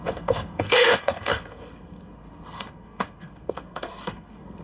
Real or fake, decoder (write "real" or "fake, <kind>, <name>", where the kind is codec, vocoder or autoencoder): fake, codec, SNAC